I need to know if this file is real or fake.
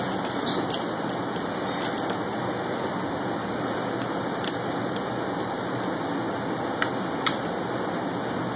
real